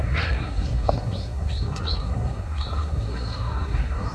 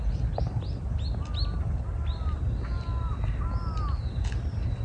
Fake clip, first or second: first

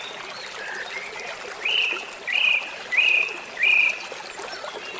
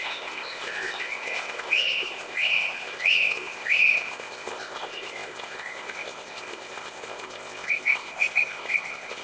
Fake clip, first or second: second